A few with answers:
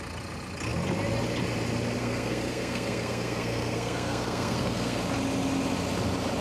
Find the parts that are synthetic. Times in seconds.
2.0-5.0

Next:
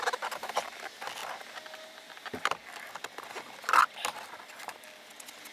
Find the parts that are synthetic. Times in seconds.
none

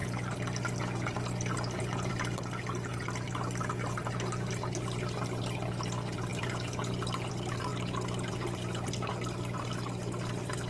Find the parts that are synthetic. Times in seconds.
none

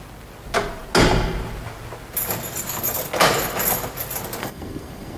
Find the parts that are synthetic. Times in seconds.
4.4-5.2

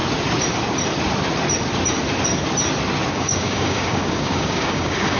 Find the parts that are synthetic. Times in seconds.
3.1-5.2